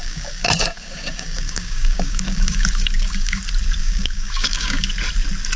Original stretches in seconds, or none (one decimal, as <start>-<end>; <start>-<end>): 3.4-3.8; 4.9-5.6